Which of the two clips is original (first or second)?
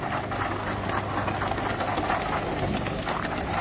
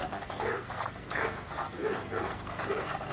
first